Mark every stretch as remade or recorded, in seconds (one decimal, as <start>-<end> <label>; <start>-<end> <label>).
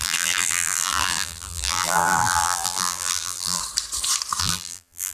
0.0-3.6 remade; 3.6-4.4 recorded; 4.4-5.1 remade